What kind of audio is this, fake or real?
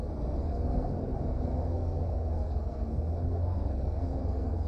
fake